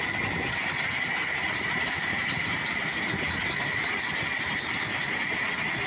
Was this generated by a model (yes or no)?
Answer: no